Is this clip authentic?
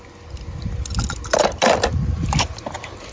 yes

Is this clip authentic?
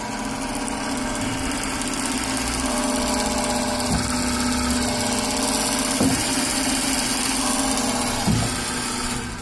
yes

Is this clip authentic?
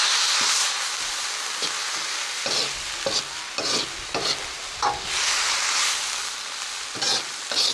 yes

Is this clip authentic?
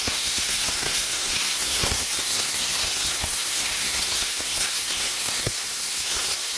no